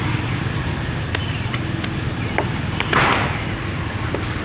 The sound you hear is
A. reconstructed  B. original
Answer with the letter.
B